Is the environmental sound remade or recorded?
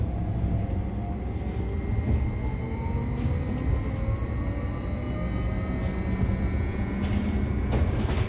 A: recorded